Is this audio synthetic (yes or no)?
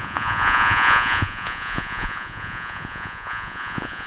yes